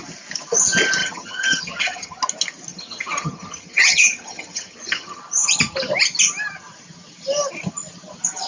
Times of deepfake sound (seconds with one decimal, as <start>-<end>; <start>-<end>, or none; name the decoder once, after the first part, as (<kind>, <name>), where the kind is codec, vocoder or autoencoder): 1.0-2.2 (vocoder, HiFi-GAN); 2.7-5.2